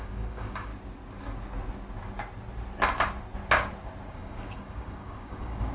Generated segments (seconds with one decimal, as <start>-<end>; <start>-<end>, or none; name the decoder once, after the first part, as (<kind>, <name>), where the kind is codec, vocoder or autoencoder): 0.0-0.7 (codec, DAC); 4.1-5.7